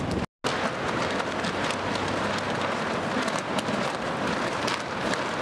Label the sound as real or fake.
real